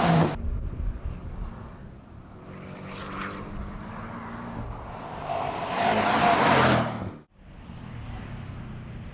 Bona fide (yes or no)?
yes